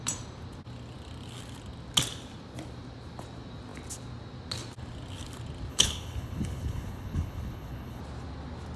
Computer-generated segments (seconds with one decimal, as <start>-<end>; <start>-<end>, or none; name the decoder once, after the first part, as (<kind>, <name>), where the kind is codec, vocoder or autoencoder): 5.7-8.0 (codec, HILCodec)